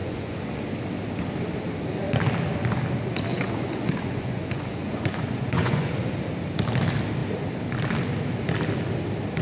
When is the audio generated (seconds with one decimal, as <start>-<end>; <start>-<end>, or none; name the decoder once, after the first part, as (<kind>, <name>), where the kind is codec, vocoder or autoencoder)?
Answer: 0.0-0.6 (vocoder, Vocos); 3.3-6.1